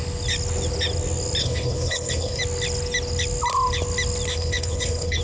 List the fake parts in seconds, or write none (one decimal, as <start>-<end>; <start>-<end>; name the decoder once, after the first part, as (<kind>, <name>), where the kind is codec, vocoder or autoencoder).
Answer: 1.4-2.4 (codec, HILCodec); 4.3-5.2